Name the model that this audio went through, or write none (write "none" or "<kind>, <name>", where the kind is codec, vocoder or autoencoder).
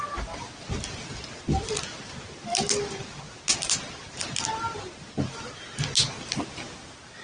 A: none